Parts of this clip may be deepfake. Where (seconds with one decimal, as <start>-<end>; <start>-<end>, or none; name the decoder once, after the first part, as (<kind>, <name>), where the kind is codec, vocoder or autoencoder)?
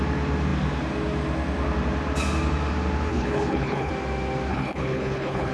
3.1-3.9 (codec, HILCodec); 4.5-5.5